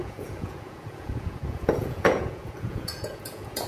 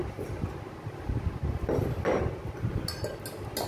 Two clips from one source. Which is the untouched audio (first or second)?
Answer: second